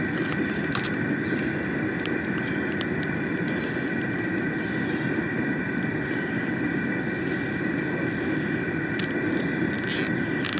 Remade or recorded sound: recorded